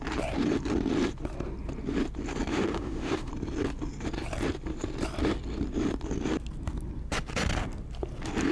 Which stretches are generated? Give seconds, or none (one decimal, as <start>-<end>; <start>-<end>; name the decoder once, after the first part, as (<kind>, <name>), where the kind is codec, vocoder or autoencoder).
2.5-3.3 (autoencoder, DAC-VAE)